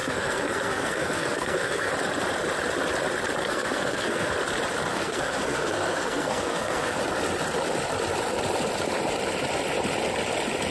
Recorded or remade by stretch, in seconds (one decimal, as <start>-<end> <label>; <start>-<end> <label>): 0.0-1.9 remade; 1.9-3.4 recorded; 3.4-4.3 remade; 4.3-4.9 recorded; 4.9-7.0 remade; 7.0-10.7 recorded